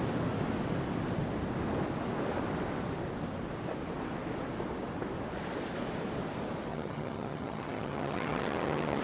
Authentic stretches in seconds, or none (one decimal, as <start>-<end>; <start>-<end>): 0.0-6.7